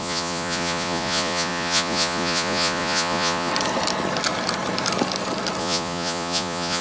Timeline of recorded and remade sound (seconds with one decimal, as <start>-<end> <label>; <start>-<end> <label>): 0.0-3.5 remade; 3.5-5.6 recorded; 5.6-6.8 remade